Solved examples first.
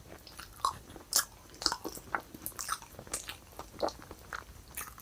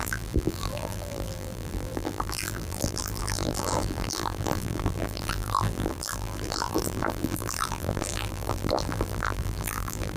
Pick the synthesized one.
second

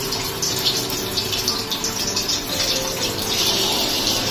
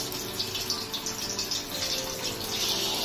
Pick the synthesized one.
first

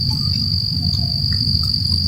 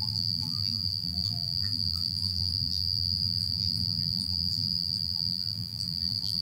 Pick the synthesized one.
second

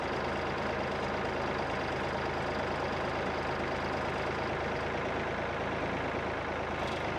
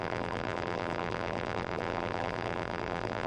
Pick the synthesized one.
second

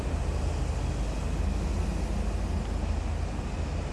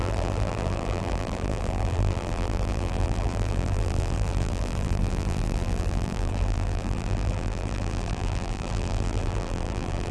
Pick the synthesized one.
second